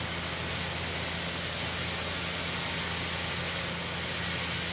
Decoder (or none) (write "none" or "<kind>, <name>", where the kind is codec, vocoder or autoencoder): none